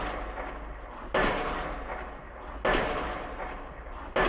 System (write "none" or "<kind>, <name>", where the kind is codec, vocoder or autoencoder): none